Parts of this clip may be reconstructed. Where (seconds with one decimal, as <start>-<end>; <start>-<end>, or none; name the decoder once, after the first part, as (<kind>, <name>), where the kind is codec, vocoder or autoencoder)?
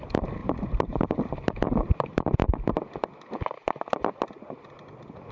none